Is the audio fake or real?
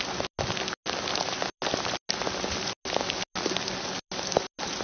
real